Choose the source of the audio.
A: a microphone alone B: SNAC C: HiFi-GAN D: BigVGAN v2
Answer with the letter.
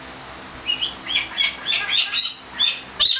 A